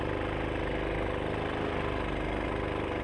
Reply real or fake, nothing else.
real